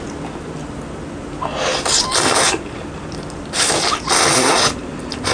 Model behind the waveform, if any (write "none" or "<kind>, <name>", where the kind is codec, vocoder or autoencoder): none